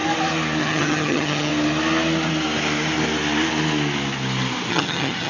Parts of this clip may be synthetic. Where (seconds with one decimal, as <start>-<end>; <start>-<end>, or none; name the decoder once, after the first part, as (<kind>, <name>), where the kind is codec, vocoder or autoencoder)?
0.6-1.5 (vocoder, HiFi-GAN); 4.7-5.3